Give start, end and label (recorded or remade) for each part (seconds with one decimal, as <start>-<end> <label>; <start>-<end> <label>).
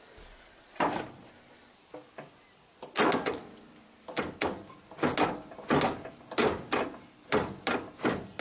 0.0-8.4 recorded